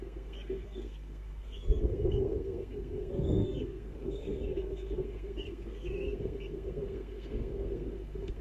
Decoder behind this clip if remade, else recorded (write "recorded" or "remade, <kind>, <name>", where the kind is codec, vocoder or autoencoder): remade, codec, SNAC